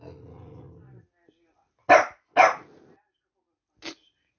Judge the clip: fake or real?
real